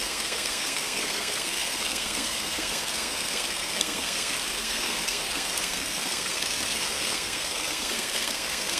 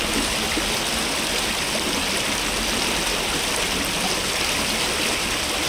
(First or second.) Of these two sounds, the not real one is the first